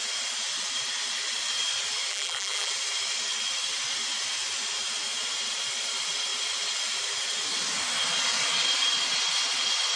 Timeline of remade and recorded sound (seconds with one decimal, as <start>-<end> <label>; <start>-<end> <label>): 0.0-2.1 recorded; 2.1-2.7 remade; 2.7-10.0 recorded